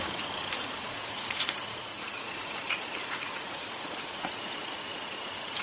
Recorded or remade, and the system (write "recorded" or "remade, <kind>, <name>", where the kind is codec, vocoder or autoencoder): remade, vocoder, Vocos